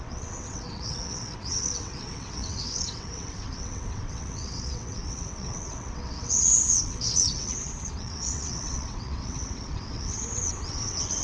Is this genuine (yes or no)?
no